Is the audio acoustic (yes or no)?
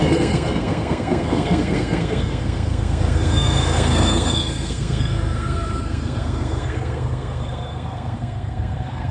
no